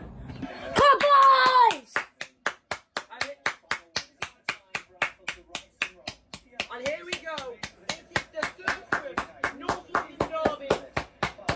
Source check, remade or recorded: recorded